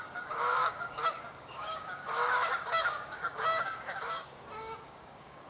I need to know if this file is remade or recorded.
remade